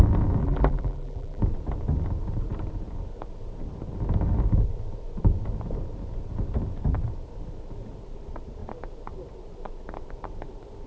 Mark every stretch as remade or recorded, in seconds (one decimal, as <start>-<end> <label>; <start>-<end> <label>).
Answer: 0.0-0.4 recorded; 0.4-1.4 remade; 1.4-10.9 recorded